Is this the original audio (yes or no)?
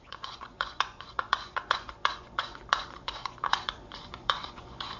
no